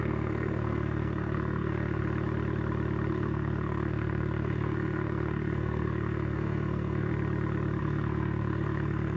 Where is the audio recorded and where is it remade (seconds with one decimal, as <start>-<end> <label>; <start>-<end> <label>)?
0.0-2.0 remade; 2.0-3.1 recorded; 3.1-7.1 remade; 7.1-7.8 recorded; 7.8-9.2 remade